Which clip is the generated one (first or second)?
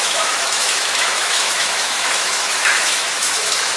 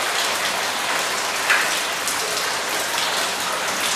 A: first